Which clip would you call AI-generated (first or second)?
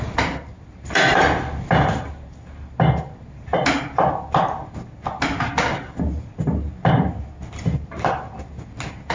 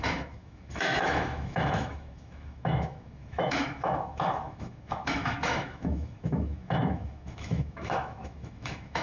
second